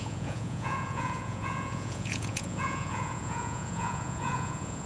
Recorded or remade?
remade